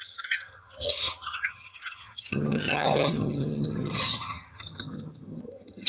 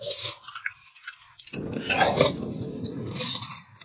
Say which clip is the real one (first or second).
second